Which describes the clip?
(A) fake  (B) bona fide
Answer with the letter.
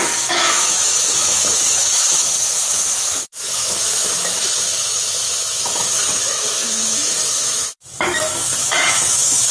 A